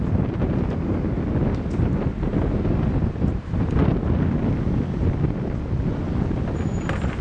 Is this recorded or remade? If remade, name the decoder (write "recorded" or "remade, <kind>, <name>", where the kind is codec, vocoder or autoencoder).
recorded